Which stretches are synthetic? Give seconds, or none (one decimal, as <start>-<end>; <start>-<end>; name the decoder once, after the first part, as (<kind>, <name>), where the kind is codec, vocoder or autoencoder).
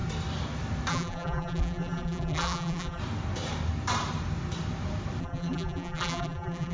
0.9-3.0 (vocoder, BigVGAN v2); 5.2-6.7